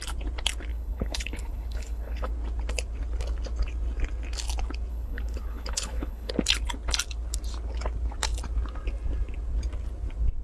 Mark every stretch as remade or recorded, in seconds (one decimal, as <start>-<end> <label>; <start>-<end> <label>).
0.0-0.7 recorded; 0.7-2.3 remade; 2.3-4.9 recorded; 4.9-6.3 remade; 6.3-10.4 recorded